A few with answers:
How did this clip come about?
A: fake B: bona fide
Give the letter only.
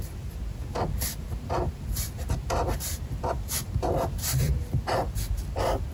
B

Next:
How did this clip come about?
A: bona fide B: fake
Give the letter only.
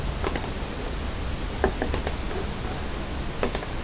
A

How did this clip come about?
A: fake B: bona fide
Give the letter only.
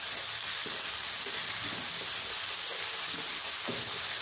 B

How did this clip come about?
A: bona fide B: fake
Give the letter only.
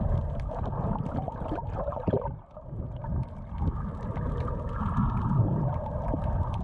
A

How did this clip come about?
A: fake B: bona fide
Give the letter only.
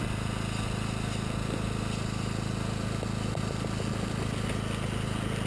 B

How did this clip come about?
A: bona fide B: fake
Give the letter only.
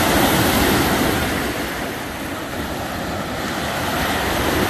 A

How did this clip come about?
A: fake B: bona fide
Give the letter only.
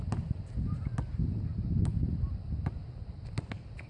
B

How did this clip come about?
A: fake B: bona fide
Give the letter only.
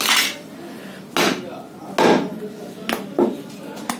B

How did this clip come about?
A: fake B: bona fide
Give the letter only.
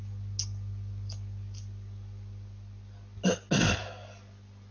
B